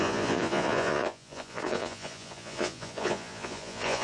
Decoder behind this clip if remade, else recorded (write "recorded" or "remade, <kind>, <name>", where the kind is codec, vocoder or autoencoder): remade, vocoder, Vocos